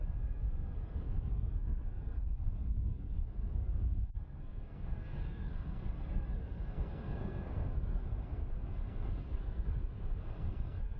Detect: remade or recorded remade